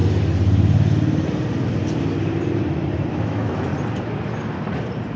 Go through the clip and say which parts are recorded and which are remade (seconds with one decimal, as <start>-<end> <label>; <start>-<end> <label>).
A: 0.0-3.1 recorded; 3.1-3.7 remade; 3.7-5.2 recorded